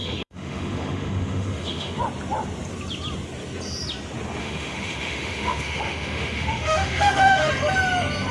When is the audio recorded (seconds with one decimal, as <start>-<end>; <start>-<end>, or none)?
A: 2.0-4.4; 7.5-8.3

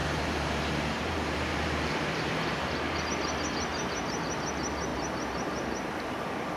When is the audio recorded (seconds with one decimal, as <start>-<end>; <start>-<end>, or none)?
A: 3.0-3.7; 4.4-4.9; 6.0-6.6

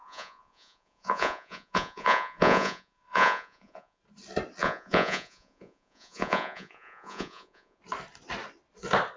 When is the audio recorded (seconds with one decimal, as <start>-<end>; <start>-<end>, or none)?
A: 4.0-4.6; 7.8-9.2

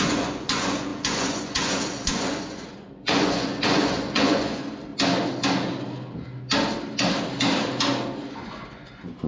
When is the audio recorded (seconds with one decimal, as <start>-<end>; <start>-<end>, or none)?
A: 4.9-8.3

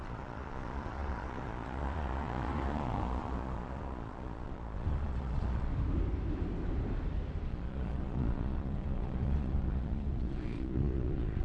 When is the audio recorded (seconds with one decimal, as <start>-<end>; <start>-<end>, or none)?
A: 5.7-7.5

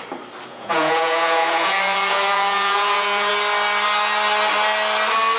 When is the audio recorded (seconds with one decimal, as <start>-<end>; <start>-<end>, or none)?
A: 0.0-0.5; 3.3-5.4

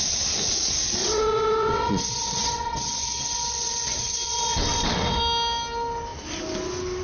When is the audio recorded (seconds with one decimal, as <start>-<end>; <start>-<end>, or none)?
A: 0.0-1.0; 5.2-7.0

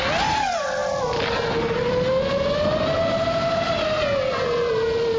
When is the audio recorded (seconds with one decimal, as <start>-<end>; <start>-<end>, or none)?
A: 0.0-5.2